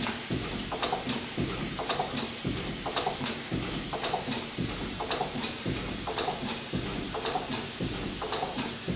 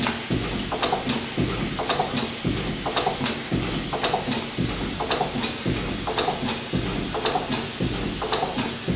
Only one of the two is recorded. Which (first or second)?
second